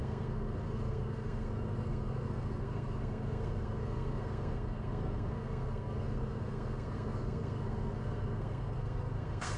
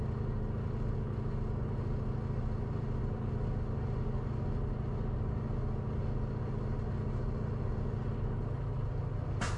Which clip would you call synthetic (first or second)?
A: first